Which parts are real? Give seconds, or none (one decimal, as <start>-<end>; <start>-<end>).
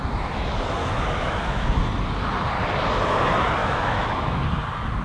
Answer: 0.0-0.8; 1.8-3.6; 4.4-5.0